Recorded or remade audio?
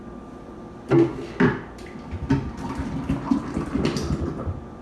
recorded